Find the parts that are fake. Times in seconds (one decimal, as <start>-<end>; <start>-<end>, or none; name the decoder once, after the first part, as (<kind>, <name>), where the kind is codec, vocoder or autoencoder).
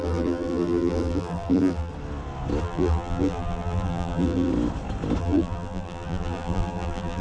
0.0-1.9 (vocoder, BigVGAN v2); 2.6-4.5; 5.2-7.2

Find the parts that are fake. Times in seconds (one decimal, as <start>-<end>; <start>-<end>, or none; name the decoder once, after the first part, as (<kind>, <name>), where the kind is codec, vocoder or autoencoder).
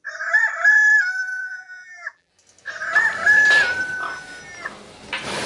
1.4-2.3 (vocoder, BigVGAN v2)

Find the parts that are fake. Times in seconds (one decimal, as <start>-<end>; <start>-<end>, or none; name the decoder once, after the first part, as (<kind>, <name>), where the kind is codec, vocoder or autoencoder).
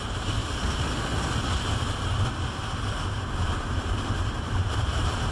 0.0-0.4 (vocoder, BigVGAN v2); 3.6-5.3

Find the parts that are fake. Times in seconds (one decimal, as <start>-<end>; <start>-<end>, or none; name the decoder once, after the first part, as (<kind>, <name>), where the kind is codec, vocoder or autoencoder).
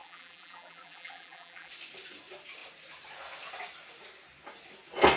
0.0-1.7 (vocoder, BigVGAN v2)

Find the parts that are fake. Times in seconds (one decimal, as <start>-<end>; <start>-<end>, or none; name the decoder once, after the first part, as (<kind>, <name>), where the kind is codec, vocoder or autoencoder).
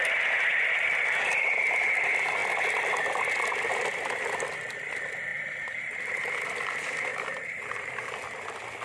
0.5-1.6 (vocoder, BigVGAN v2); 5.3-6.0; 7.1-8.1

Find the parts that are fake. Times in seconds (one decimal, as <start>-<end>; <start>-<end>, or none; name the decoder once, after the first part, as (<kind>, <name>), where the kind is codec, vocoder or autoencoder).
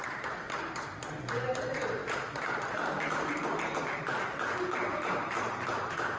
0.0-2.0 (vocoder, BigVGAN v2); 2.7-3.3; 5.7-6.2